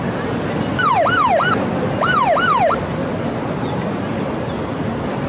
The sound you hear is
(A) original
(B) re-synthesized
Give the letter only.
A